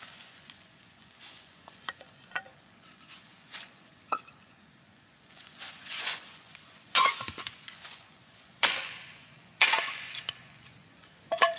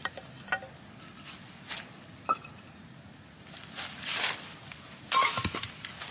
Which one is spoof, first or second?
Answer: first